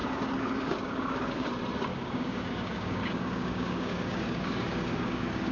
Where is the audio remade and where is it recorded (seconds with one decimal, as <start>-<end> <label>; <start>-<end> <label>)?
0.0-1.5 remade; 1.5-1.9 recorded; 1.9-5.5 remade